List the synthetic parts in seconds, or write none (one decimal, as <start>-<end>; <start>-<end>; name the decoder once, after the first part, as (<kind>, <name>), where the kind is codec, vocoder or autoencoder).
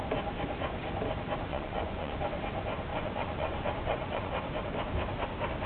1.5-2.2 (vocoder, Vocos); 2.9-4.3